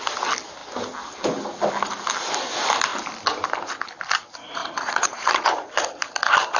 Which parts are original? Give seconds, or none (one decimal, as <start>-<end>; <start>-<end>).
0.0-4.6; 5.7-6.6